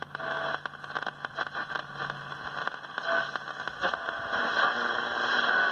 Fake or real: real